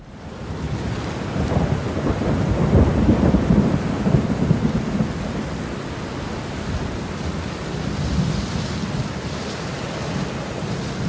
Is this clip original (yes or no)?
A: yes